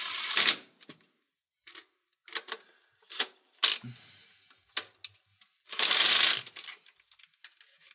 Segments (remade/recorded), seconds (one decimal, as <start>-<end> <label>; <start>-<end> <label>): 0.0-7.9 recorded